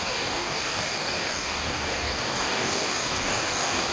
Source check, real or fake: fake